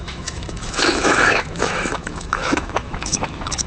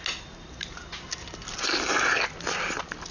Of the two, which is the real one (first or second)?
second